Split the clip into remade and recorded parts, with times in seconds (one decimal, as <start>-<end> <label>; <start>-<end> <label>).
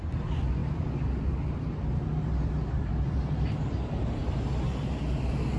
0.0-0.6 recorded; 0.6-2.0 remade; 2.0-5.6 recorded